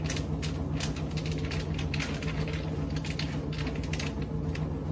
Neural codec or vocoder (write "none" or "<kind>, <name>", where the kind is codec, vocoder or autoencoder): none